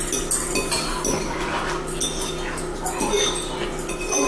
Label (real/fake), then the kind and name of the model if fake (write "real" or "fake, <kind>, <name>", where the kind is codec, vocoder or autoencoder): real